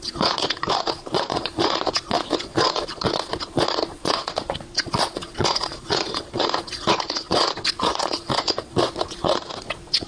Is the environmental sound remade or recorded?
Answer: remade